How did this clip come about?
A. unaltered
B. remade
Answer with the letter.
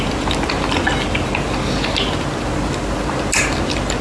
A